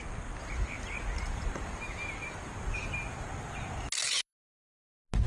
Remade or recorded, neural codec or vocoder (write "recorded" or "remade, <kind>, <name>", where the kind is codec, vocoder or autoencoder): recorded